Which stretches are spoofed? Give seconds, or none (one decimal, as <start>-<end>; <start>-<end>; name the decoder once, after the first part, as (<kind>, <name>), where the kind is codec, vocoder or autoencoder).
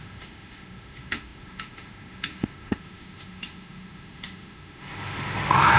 0.0-5.8 (autoencoder, DAC-VAE)